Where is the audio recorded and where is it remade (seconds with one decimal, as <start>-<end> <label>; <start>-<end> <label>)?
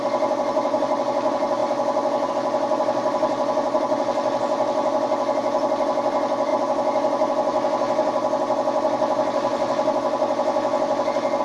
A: 0.0-11.4 recorded